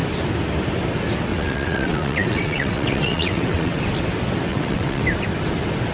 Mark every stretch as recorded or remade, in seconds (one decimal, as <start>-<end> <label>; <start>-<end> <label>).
0.0-1.3 recorded; 1.3-3.8 remade; 3.8-4.5 recorded; 4.5-5.0 remade; 5.0-5.9 recorded

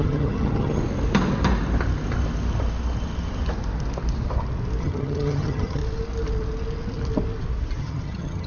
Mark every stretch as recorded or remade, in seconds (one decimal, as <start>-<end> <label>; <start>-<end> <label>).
0.0-0.8 remade; 0.8-4.8 recorded; 4.8-5.8 remade; 5.8-7.8 recorded; 7.8-8.5 remade

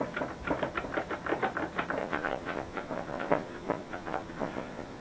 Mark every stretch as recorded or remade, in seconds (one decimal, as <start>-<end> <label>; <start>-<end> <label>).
0.0-2.0 recorded; 2.0-5.0 remade

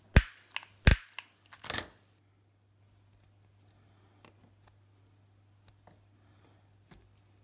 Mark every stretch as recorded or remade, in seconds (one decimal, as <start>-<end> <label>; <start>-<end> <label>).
0.0-7.4 recorded

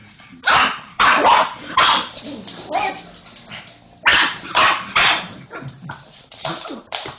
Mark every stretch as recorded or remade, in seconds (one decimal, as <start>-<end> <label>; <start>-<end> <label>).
0.0-2.2 remade; 2.2-4.1 recorded; 4.1-7.2 remade

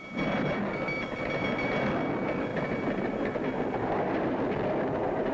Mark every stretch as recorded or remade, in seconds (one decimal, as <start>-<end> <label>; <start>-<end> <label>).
0.0-5.3 recorded